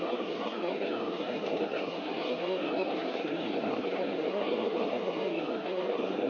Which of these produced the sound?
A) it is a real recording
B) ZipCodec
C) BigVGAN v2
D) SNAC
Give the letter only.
D